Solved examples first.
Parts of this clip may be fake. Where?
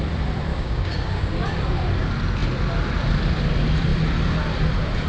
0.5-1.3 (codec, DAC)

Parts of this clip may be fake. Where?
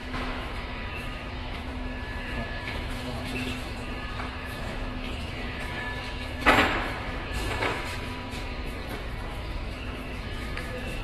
0.0-8.8 (autoencoder, DAC-VAE); 9.3-11.0